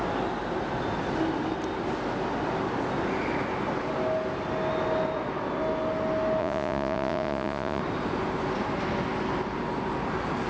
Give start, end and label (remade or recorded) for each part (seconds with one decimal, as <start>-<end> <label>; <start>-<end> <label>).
0.0-6.4 recorded; 6.4-7.8 remade; 7.8-10.5 recorded

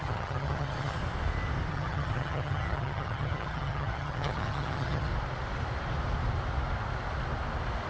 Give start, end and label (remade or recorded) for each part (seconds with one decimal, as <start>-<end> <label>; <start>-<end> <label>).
0.0-1.0 remade; 1.0-1.7 recorded; 1.7-5.1 remade; 5.1-7.9 recorded